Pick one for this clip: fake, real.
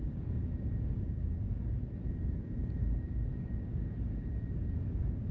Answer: fake